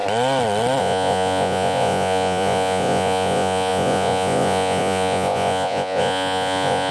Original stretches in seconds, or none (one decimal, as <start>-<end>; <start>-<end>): 0.0-0.8